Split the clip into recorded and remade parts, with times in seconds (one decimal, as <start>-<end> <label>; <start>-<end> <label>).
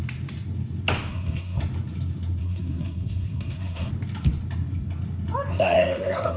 0.0-1.1 recorded; 1.1-1.6 remade; 1.6-2.4 recorded; 2.4-3.9 remade; 3.9-5.5 recorded; 5.5-6.4 remade